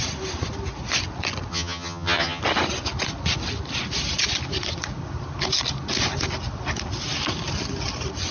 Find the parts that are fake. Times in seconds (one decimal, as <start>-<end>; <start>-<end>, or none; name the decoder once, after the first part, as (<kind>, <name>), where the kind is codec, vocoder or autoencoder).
1.5-2.4 (vocoder, HiFi-GAN)

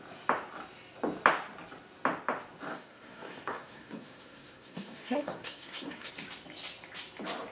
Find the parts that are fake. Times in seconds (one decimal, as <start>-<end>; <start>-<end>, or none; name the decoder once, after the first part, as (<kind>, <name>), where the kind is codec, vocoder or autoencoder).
2.7-6.1 (codec, SNAC)

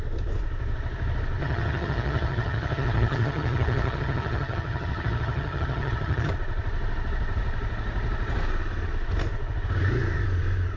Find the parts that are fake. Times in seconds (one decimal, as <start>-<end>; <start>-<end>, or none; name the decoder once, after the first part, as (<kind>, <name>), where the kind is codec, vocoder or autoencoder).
1.4-6.3 (vocoder, HiFi-GAN)